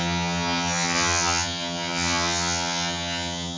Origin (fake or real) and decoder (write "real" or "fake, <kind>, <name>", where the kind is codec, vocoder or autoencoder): fake, vocoder, HiFi-GAN